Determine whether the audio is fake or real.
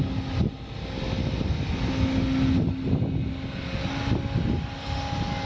real